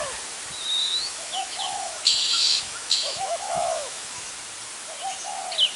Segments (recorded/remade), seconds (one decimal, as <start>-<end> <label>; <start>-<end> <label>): 0.0-0.8 recorded; 0.8-4.3 remade; 4.3-5.8 recorded